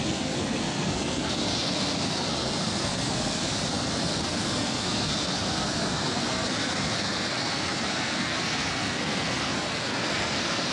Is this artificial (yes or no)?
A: yes